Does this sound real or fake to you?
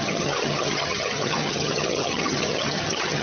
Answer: fake